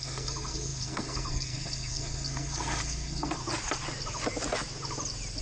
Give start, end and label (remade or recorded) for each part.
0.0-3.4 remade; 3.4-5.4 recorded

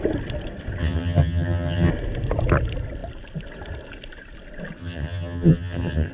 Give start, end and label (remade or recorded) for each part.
0.0-0.8 recorded; 0.8-1.9 remade; 1.9-4.8 recorded; 4.8-6.1 remade

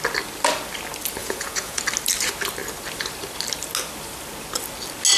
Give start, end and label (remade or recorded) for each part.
0.0-1.2 recorded; 1.2-1.8 remade; 1.8-5.2 recorded

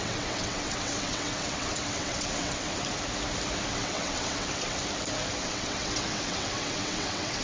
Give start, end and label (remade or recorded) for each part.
0.0-2.7 remade; 2.7-3.7 recorded; 3.7-4.8 remade; 4.8-5.4 recorded; 5.4-7.4 remade